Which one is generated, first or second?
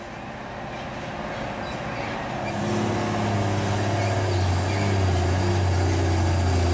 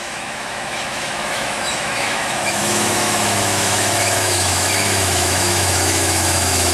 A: second